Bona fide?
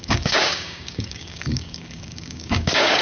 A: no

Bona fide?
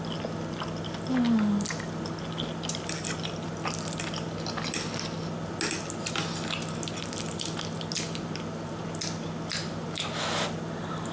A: yes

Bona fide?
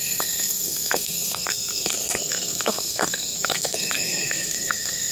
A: no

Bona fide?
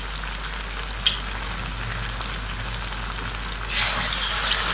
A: yes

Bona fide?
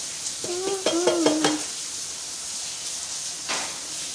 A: yes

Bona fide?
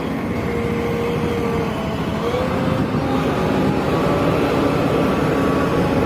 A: yes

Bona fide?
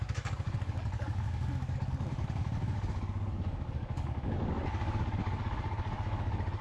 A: no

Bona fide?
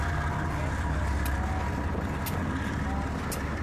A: yes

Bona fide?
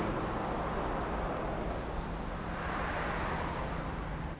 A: yes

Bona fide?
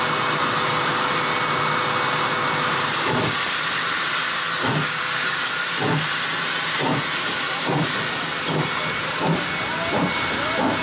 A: yes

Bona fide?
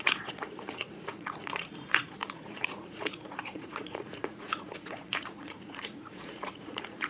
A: no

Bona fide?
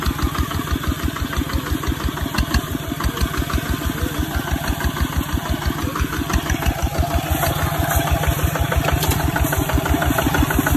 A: no